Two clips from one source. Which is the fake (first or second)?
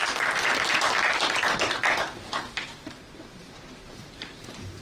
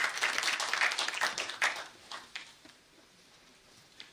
second